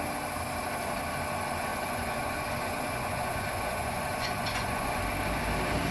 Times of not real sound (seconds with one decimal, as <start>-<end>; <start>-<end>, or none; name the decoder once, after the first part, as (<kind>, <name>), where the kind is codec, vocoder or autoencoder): 1.7-5.0 (vocoder, Vocos)

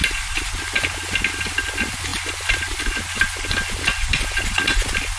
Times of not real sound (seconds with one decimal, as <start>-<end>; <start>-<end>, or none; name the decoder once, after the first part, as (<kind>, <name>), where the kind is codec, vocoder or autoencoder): 0.0-0.5 (vocoder, BigVGAN v2)